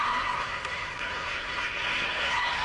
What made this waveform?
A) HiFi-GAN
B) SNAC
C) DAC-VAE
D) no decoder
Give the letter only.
B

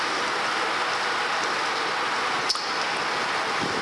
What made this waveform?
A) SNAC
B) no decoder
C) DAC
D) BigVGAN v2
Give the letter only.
B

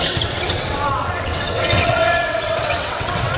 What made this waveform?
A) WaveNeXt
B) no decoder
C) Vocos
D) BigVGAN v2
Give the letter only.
A